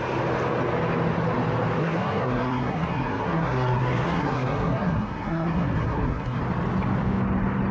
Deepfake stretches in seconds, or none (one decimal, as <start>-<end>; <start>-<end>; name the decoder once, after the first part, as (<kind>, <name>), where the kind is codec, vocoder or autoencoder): 1.8-6.4 (codec, SNAC)